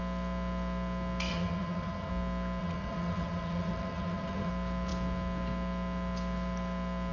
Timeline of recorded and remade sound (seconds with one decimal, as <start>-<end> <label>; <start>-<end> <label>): 0.0-1.3 recorded; 1.3-2.1 remade; 2.1-2.6 recorded; 2.6-4.5 remade; 4.5-7.1 recorded